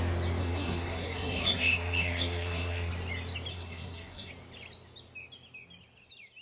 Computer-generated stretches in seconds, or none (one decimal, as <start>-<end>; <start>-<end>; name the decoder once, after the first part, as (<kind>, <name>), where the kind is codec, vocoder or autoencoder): 0.4-2.9 (codec, SNAC); 3.5-4.3